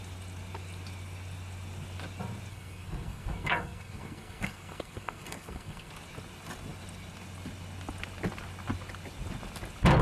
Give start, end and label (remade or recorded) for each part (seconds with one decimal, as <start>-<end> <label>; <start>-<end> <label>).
0.0-2.5 recorded; 2.5-5.9 remade; 5.9-10.0 recorded